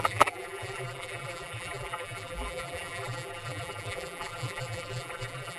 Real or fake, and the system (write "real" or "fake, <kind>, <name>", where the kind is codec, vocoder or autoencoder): fake, vocoder, BigVGAN v2